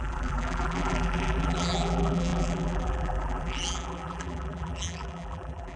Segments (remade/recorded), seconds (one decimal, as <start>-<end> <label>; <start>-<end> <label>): 0.0-5.8 remade